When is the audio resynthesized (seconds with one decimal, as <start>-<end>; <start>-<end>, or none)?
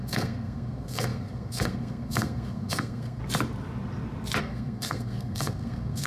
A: 0.0-3.2; 4.4-6.1